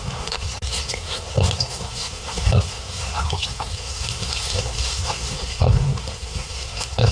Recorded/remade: remade